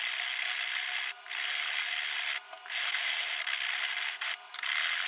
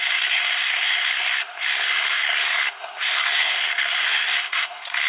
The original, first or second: first